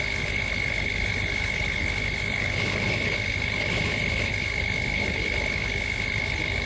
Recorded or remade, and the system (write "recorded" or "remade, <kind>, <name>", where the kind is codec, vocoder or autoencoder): remade, codec, HILCodec